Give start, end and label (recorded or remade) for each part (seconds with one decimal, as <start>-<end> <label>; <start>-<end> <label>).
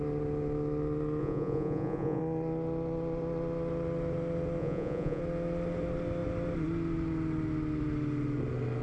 0.0-1.2 recorded; 1.2-2.2 remade; 2.2-4.6 recorded; 4.6-5.2 remade; 5.2-8.8 recorded